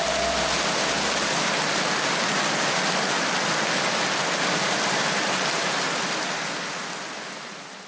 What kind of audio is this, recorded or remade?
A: recorded